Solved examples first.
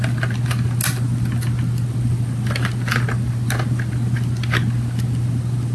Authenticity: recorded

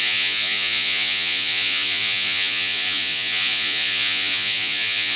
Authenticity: remade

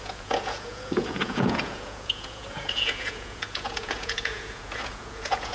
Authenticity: remade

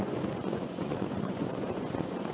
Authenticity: remade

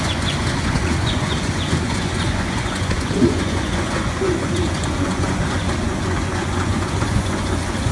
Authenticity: remade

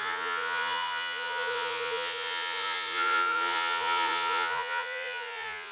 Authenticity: remade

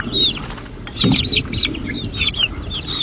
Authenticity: recorded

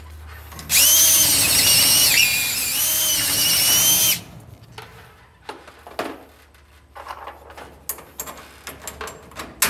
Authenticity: recorded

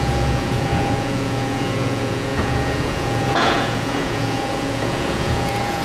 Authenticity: remade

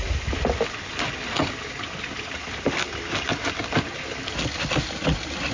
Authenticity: recorded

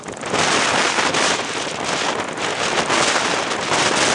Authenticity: recorded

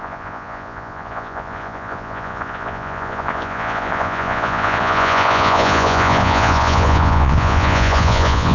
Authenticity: remade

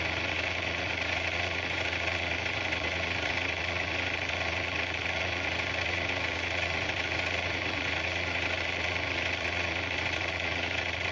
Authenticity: remade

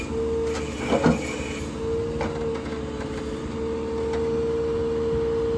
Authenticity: recorded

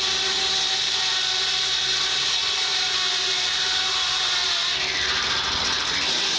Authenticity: recorded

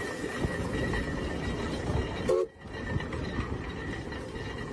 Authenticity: recorded